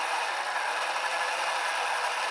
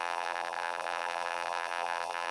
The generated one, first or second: second